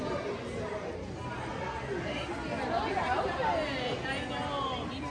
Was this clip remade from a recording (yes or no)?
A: no